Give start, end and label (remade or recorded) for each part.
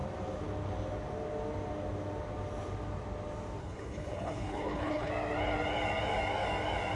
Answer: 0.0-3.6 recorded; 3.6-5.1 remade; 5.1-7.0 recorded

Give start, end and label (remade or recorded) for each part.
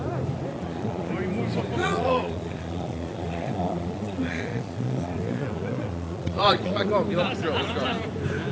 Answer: 0.0-0.5 recorded; 0.5-1.1 remade; 1.1-1.8 recorded; 1.8-6.9 remade; 6.9-8.5 recorded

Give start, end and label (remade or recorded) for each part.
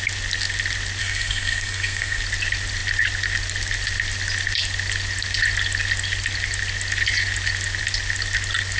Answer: 0.0-1.0 recorded; 1.0-2.2 remade; 2.2-8.8 recorded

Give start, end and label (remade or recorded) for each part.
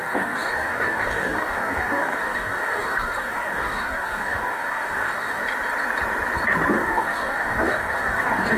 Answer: 0.0-5.4 remade; 5.4-6.7 recorded; 6.7-8.6 remade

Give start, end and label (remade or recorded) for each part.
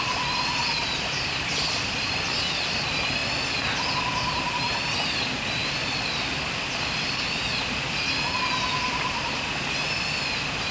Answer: 0.0-10.7 recorded